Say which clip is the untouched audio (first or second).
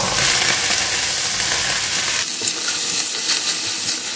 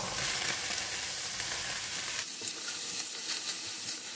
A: first